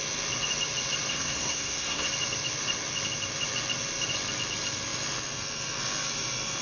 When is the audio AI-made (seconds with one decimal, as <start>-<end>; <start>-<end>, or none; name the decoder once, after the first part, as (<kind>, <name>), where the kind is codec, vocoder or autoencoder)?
1.1-2.1 (codec, SNAC)